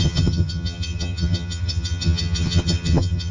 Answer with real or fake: fake